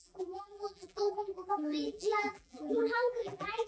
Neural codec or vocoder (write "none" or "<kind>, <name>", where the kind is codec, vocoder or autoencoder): vocoder, BigVGAN v2